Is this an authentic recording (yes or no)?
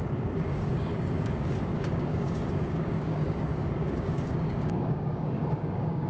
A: no